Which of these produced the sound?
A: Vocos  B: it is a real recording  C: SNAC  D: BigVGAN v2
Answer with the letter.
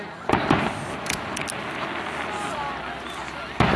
B